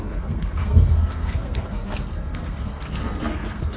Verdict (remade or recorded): remade